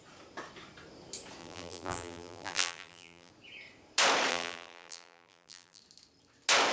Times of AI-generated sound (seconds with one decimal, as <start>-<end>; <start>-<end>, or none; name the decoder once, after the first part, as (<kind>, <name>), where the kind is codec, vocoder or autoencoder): 1.4-3.3 (vocoder, BigVGAN v2); 4.3-5.8